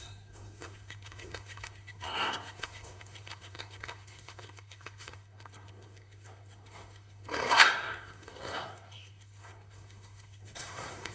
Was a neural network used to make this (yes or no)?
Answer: yes